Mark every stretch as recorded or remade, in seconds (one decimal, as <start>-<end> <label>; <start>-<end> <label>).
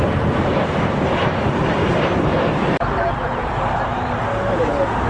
0.0-1.2 recorded; 1.2-4.2 remade; 4.2-5.1 recorded